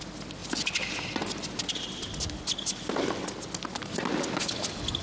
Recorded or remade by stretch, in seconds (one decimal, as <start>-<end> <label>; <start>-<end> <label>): 0.0-5.0 recorded